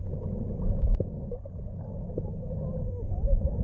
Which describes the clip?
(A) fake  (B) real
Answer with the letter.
A